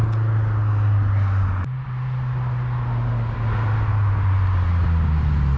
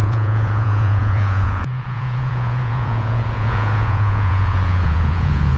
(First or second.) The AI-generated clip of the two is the second